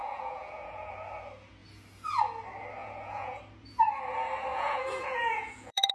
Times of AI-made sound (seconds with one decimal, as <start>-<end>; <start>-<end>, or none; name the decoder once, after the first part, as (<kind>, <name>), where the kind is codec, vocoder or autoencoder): 0.0-0.9 (vocoder, Vocos); 2.8-3.4; 4.5-5.9

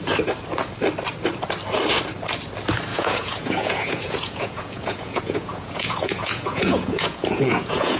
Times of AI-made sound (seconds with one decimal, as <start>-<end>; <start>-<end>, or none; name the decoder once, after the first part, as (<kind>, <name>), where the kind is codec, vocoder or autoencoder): 2.9-8.0 (vocoder, Vocos)

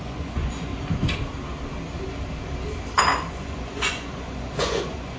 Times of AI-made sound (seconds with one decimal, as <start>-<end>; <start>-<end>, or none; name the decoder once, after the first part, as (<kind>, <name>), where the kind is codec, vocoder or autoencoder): 0.0-0.7 (vocoder, Vocos); 3.3-5.2

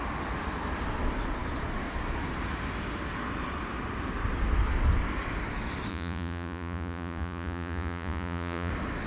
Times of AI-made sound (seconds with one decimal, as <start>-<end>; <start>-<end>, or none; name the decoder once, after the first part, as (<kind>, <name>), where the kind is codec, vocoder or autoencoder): 5.9-8.7 (vocoder, Vocos)

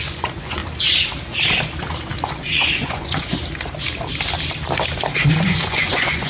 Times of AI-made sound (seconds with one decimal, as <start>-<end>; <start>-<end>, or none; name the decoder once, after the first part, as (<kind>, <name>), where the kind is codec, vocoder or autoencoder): 0.0-0.6 (vocoder, Vocos); 2.3-3.4; 5.3-6.3

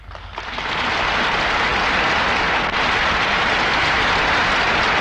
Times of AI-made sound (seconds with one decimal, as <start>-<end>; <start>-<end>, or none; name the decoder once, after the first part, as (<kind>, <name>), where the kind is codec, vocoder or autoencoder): none